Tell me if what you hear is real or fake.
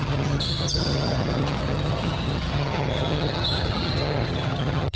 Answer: fake